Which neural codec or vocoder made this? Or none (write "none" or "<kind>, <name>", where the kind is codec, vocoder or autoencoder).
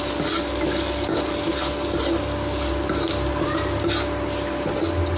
none